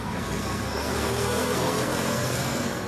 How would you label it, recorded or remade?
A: remade